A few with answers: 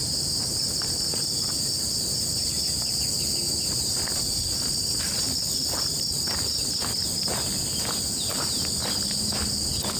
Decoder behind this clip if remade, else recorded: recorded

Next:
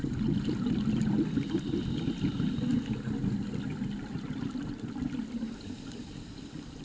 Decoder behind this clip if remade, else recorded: recorded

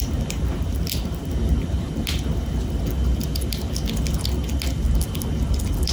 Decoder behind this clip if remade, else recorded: recorded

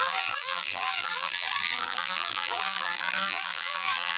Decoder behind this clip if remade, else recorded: remade, vocoder, BigVGAN v2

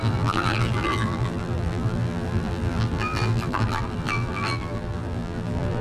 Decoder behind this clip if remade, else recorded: remade, vocoder, BigVGAN v2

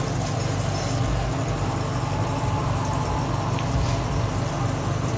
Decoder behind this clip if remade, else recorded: recorded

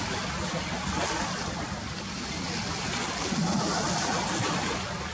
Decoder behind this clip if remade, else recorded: recorded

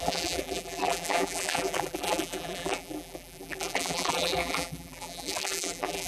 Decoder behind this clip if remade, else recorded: remade, vocoder, BigVGAN v2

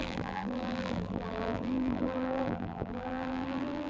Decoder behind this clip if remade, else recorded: remade, vocoder, BigVGAN v2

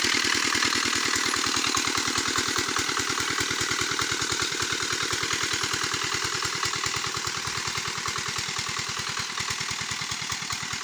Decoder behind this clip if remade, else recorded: recorded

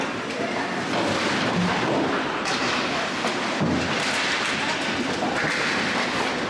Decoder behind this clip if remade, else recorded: remade, vocoder, BigVGAN v2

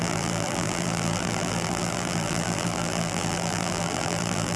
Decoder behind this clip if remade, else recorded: remade, vocoder, BigVGAN v2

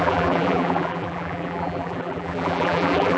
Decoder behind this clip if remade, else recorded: remade, vocoder, BigVGAN v2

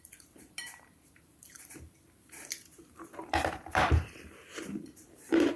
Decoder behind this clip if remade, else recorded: remade, vocoder, BigVGAN v2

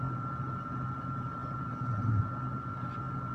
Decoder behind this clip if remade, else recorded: recorded